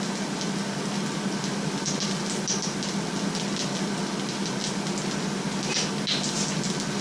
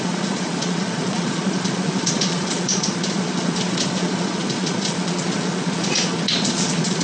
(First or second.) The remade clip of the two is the second